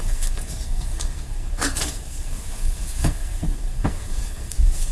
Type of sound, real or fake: fake